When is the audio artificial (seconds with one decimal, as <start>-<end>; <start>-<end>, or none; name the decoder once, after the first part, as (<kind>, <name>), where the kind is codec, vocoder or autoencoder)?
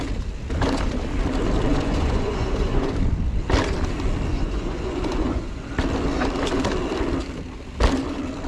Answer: 1.7-2.9 (vocoder, Vocos); 4.3-5.7